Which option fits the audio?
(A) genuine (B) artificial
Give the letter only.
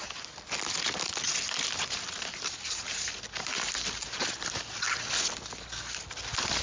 A